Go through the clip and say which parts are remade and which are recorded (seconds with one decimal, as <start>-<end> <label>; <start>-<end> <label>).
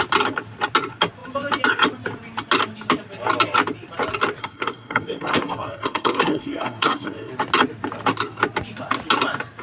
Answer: 0.0-4.4 recorded; 4.4-7.3 remade; 7.3-9.6 recorded